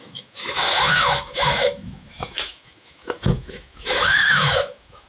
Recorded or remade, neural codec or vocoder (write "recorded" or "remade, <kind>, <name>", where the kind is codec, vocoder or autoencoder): remade, autoencoder, DAC-VAE